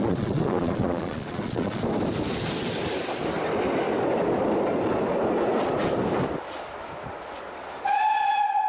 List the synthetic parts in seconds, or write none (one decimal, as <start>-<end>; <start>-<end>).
0.0-1.8